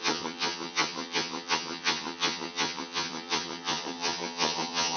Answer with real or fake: fake